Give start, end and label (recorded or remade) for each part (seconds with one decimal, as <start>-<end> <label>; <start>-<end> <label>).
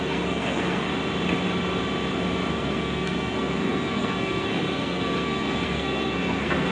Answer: 0.0-0.9 remade; 0.9-2.5 recorded; 2.5-6.7 remade